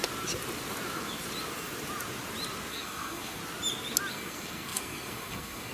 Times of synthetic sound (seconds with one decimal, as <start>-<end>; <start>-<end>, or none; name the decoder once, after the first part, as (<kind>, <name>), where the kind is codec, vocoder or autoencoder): 2.7-3.4 (codec, SNAC); 4.1-5.7